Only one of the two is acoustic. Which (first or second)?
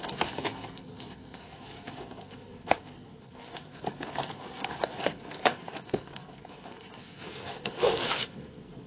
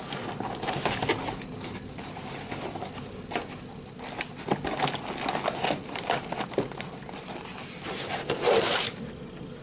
second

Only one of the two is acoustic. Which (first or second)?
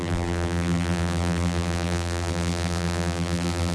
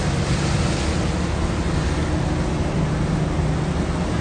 second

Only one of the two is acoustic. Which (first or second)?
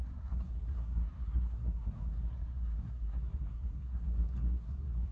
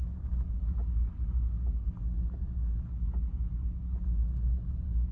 second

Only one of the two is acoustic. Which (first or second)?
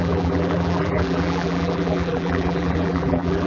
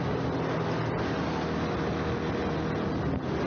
second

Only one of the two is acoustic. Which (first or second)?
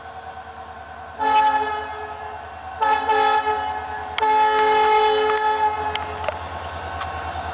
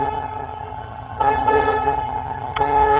first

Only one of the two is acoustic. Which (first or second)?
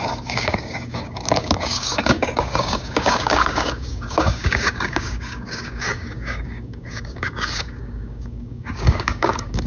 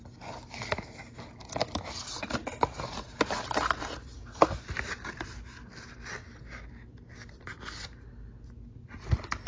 second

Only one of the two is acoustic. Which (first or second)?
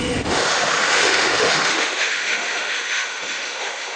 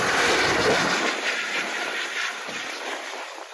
second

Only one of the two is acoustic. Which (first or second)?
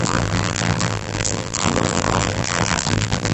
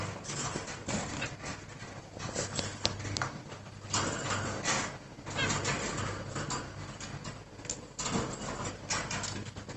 second